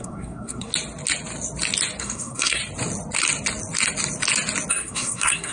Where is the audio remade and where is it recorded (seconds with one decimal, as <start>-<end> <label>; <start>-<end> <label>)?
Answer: 0.0-0.7 remade; 0.7-2.0 recorded; 2.0-2.6 remade; 2.6-4.7 recorded; 4.7-5.5 remade